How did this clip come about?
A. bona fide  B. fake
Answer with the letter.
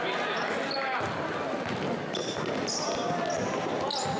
A